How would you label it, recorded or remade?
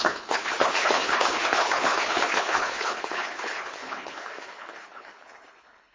remade